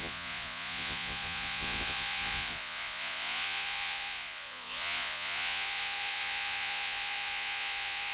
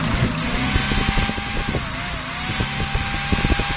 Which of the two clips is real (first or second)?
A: second